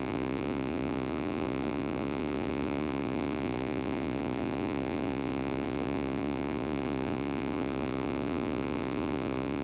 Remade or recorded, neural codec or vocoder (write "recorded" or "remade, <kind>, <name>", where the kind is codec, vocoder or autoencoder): remade, vocoder, Vocos